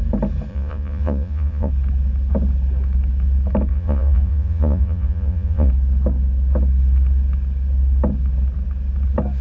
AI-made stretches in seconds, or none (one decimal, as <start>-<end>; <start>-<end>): 0.5-1.7; 3.7-5.7